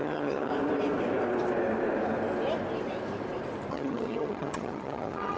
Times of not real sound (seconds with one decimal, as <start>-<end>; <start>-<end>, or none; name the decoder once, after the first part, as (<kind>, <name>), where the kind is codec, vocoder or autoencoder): 0.0-0.5 (vocoder, HiFi-GAN); 3.7-5.4